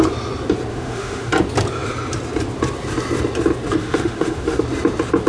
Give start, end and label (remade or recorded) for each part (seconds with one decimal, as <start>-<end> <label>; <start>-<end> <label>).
0.0-0.7 recorded; 0.7-1.3 remade; 1.3-3.8 recorded; 3.8-4.6 remade; 4.6-5.3 recorded